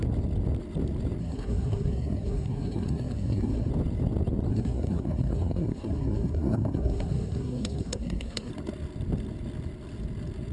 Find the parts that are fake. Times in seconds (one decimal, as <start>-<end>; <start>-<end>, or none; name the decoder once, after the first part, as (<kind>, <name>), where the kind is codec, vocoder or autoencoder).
1.2-3.7 (codec, SNAC); 4.5-8.5